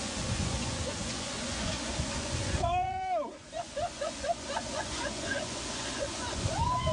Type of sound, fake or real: fake